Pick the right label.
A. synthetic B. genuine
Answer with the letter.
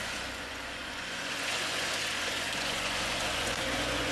A